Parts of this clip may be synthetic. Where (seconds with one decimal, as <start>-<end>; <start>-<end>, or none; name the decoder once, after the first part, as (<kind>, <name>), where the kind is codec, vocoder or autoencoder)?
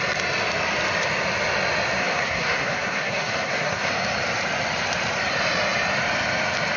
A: 2.0-3.9 (codec, SNAC)